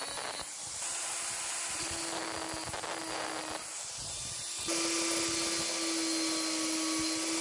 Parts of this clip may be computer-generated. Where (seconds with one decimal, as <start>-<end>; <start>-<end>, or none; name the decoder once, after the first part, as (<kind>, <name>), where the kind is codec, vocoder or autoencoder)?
none